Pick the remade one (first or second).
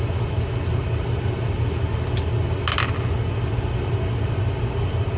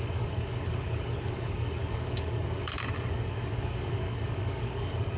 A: second